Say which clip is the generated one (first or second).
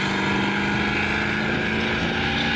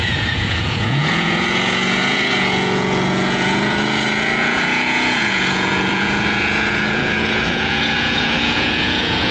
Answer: second